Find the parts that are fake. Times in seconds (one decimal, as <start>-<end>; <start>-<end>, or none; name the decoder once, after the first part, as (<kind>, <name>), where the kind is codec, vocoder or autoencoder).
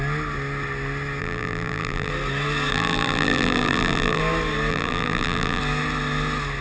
1.2-2.1 (vocoder, BigVGAN v2); 2.7-4.2; 4.7-5.6